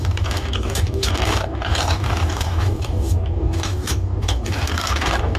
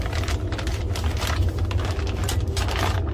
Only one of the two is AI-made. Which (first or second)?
first